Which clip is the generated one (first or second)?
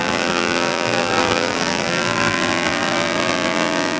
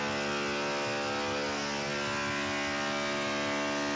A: first